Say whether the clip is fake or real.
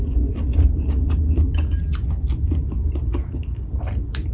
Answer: real